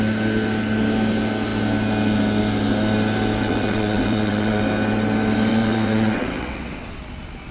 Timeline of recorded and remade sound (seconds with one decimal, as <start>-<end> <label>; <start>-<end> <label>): 0.0-3.4 recorded; 3.4-4.6 remade; 4.6-5.5 recorded; 5.5-7.0 remade; 7.0-7.5 recorded